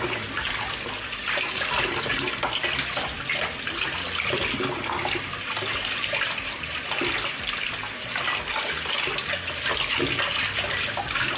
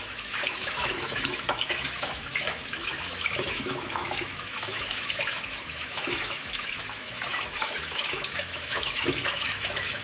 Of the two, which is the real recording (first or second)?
first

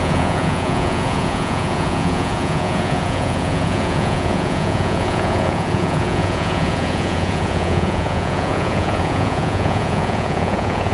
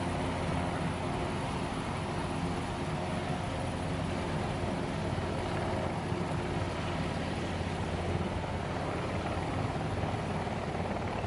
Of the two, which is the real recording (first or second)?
second